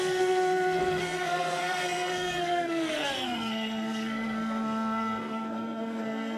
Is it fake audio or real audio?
fake